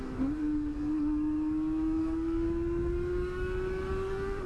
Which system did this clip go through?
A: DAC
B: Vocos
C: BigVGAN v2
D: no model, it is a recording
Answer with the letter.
A